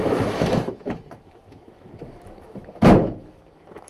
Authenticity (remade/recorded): remade